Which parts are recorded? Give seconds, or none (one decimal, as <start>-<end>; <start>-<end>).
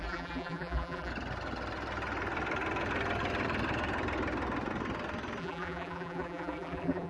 1.1-5.4